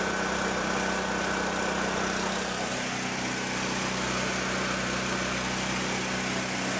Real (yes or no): yes